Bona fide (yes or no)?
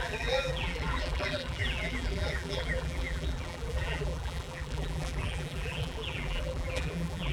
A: no